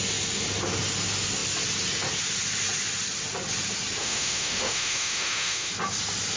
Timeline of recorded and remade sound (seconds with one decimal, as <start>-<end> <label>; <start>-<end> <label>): 0.0-4.0 recorded; 4.0-5.7 remade; 5.7-6.4 recorded